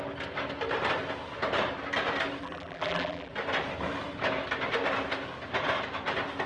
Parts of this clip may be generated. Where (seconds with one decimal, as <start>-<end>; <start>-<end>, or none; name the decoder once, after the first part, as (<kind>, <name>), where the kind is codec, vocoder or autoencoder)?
2.4-3.3 (vocoder, BigVGAN v2)